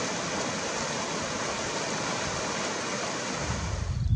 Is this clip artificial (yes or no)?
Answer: no